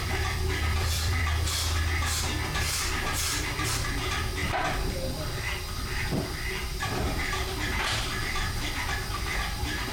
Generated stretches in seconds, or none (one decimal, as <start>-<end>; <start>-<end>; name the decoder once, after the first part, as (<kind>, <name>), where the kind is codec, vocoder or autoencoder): 0.0-1.3 (vocoder, BigVGAN v2); 6.7-9.1